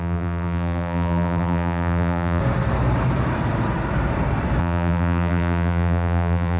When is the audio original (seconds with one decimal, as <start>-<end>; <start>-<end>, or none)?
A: 2.4-4.6